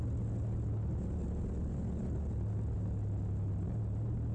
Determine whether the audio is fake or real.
real